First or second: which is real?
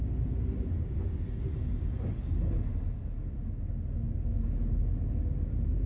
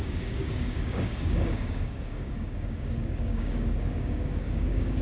first